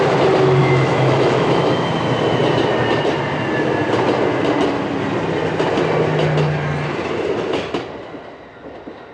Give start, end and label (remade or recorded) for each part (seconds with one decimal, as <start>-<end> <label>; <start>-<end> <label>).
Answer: 0.0-0.6 recorded; 0.6-1.7 remade; 1.7-9.1 recorded